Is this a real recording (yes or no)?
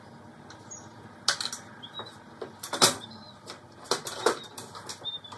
yes